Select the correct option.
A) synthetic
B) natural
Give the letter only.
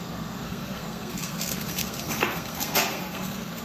A